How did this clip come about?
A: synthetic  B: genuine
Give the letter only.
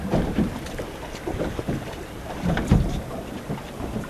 B